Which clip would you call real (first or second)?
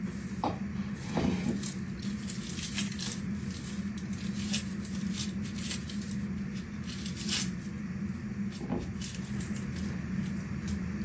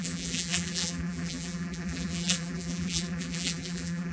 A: first